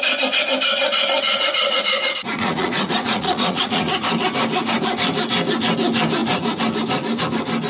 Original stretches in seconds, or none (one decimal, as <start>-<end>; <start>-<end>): 0.0-1.3; 3.9-7.7